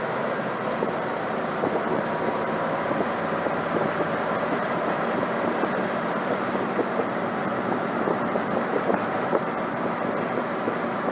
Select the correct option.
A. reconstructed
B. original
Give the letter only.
A